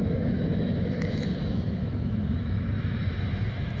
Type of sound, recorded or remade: remade